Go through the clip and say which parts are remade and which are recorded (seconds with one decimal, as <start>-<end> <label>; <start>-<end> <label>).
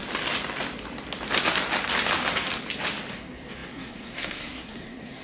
0.0-3.1 recorded; 3.1-5.2 remade